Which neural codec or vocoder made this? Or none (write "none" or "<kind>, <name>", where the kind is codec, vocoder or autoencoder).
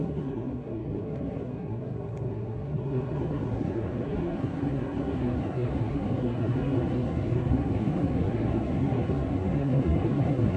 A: codec, SNAC